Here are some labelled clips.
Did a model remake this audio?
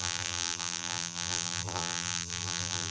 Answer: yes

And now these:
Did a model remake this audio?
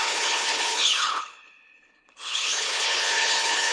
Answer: yes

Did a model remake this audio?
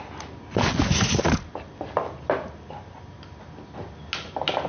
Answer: no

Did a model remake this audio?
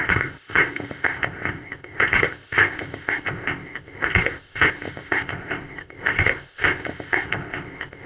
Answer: yes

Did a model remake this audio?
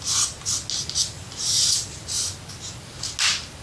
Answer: no